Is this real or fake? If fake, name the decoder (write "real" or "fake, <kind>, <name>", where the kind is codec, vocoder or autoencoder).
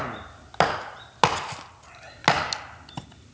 real